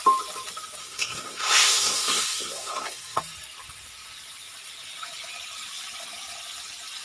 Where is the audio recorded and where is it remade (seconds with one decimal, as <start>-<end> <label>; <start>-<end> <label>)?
0.0-0.8 recorded; 0.8-3.2 remade; 3.2-7.0 recorded